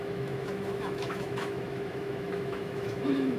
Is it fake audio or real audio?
fake